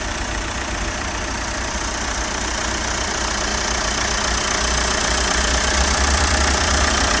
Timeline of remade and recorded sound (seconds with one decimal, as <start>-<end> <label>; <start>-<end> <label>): 0.0-3.5 remade; 3.5-5.5 recorded; 5.5-7.2 remade